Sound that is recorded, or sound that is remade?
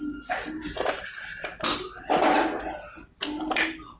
recorded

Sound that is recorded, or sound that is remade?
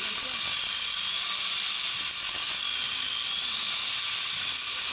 recorded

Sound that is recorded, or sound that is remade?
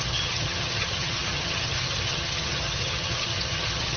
remade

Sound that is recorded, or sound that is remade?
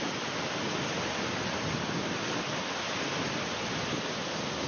recorded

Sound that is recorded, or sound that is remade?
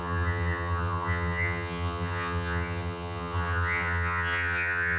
remade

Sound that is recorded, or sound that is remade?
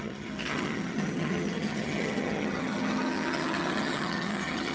remade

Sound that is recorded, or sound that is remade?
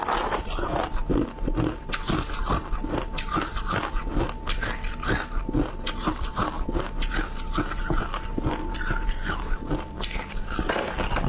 recorded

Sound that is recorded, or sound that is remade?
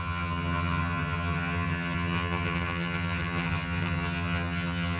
remade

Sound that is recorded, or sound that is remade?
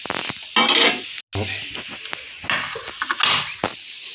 recorded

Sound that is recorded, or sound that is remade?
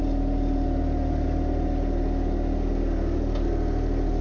recorded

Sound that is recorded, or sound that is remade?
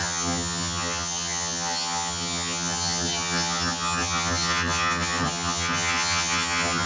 remade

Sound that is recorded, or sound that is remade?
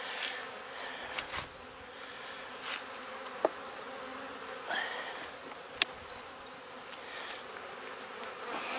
recorded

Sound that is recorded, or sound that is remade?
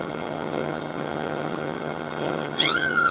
remade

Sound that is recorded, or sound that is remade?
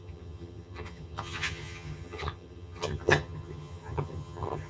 remade